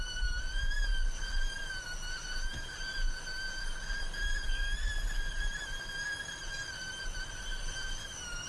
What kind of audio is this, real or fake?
real